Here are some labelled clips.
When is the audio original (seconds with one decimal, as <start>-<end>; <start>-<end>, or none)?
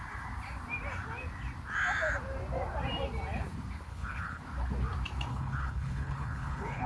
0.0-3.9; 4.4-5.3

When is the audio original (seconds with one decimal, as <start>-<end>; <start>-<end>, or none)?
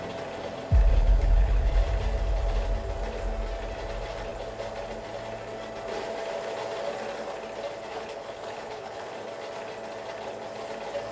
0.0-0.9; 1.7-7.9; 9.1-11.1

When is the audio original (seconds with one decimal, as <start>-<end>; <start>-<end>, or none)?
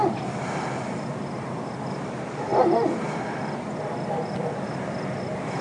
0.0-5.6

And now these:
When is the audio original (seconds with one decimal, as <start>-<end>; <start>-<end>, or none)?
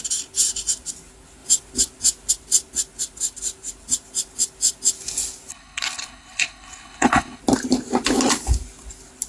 0.0-5.5; 7.4-9.3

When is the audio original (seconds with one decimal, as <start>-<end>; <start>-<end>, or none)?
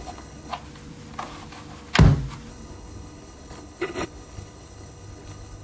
0.5-2.5